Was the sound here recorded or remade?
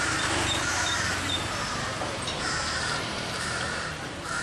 remade